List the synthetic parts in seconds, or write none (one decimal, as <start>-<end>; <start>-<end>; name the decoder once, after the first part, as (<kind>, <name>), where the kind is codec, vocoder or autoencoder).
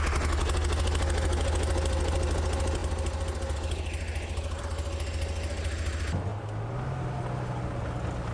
none